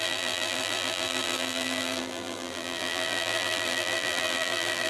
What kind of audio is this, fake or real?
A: fake